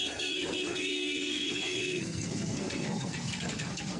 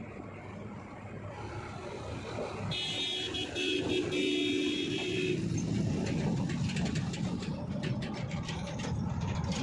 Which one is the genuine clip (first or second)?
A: second